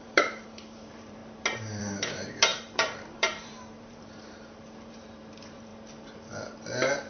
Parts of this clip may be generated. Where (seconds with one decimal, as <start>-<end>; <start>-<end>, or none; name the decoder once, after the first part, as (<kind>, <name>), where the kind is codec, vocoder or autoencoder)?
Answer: 0.0-1.2 (vocoder, BigVGAN v2); 1.8-5.7